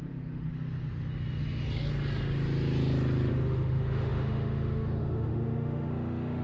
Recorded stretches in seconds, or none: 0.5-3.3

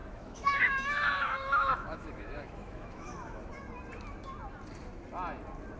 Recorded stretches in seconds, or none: 3.5-5.8

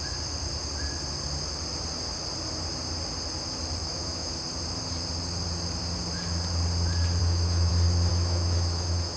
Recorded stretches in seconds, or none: 0.0-3.8; 4.4-7.2; 7.7-8.1

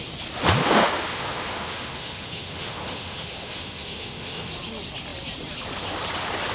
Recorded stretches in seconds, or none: 0.0-0.6; 4.5-6.5

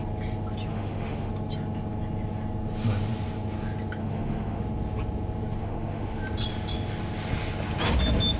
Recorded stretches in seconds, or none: 0.0-0.7; 1.3-4.0; 4.6-5.6; 6.2-8.4

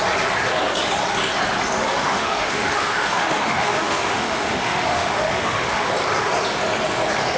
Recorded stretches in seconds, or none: 0.0-1.9; 5.9-7.4